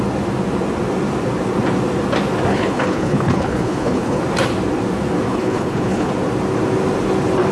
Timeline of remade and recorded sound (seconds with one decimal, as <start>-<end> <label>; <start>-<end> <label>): 0.0-2.5 recorded; 2.5-4.2 remade; 4.2-5.3 recorded; 5.3-6.1 remade; 6.1-7.5 recorded